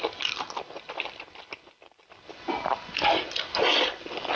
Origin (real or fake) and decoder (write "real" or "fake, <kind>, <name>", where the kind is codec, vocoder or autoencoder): real